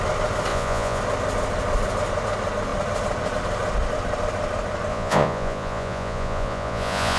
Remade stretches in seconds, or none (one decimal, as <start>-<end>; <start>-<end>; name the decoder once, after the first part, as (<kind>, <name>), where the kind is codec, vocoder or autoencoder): 0.5-1.0 (vocoder, Vocos); 4.9-7.2